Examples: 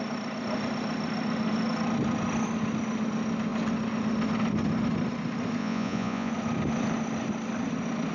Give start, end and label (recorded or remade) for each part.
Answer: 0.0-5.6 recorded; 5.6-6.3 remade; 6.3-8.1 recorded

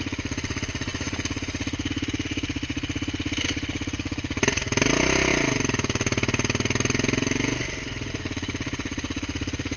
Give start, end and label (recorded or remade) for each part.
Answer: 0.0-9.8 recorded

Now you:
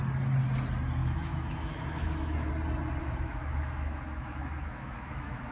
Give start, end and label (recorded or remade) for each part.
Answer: 0.0-1.0 recorded; 1.0-2.5 remade; 2.5-3.0 recorded; 3.0-5.5 remade